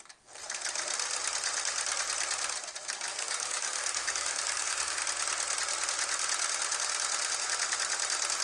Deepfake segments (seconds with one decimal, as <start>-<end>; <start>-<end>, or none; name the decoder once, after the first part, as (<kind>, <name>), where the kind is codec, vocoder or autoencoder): 3.1-5.0 (codec, DAC)